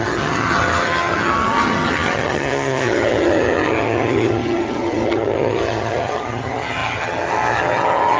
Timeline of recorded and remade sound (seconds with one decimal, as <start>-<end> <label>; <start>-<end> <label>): 0.0-8.2 remade